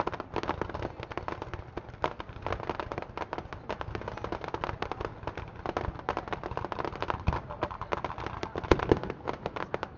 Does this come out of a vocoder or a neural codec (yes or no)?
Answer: no